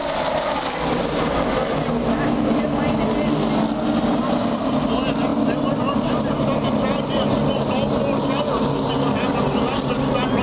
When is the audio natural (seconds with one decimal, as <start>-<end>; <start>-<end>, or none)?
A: 0.0-10.4